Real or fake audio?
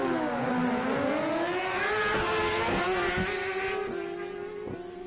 real